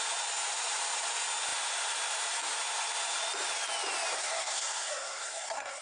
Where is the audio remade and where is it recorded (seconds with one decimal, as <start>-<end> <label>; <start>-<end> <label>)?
0.0-4.1 recorded; 4.1-5.8 remade